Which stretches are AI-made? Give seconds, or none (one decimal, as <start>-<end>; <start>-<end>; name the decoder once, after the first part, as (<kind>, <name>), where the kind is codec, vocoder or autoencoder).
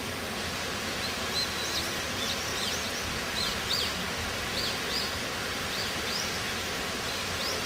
none